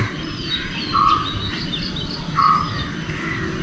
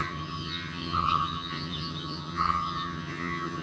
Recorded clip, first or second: first